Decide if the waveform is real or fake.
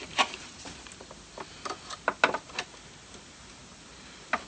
real